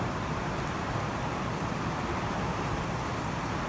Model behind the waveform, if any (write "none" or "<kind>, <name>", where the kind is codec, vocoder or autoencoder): none